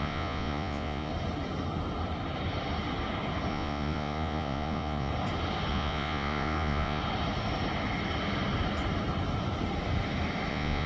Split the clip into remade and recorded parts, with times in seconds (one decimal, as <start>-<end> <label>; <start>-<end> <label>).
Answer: 0.0-1.1 remade; 1.1-3.5 recorded; 3.5-5.1 remade; 5.1-5.7 recorded; 5.7-7.0 remade; 7.0-10.5 recorded; 10.5-10.9 remade